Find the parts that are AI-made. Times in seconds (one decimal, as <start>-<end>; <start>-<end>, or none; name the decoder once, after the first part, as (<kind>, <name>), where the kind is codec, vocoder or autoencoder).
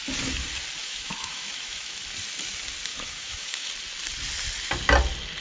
0.8-2.0 (autoencoder, DAC-VAE); 2.9-3.7